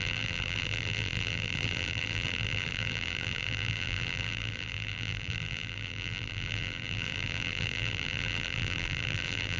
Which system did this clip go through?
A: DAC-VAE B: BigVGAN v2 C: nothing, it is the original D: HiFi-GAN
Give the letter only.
B